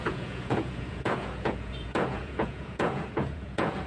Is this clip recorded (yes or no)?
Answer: no